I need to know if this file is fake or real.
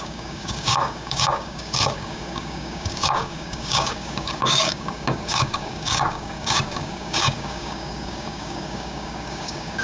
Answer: fake